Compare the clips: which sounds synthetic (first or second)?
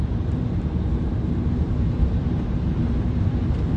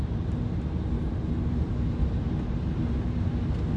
first